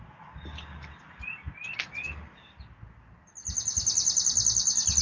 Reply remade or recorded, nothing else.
recorded